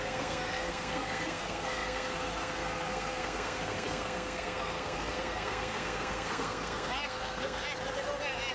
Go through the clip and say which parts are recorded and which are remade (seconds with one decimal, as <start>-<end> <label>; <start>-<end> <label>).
0.0-7.6 remade; 7.6-8.5 recorded